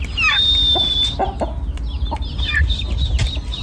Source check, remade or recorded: recorded